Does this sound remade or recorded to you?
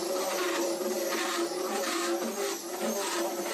recorded